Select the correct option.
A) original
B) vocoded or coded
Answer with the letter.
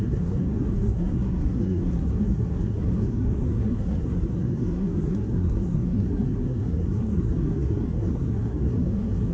B